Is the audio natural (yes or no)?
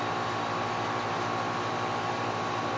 yes